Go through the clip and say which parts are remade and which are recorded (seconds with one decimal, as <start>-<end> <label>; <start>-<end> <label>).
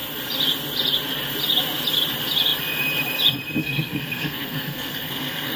0.0-3.6 recorded; 3.6-5.6 remade